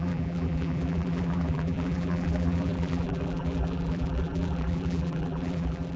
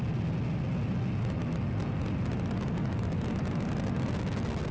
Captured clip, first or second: second